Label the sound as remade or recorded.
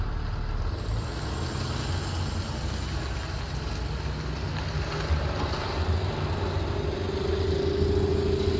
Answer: recorded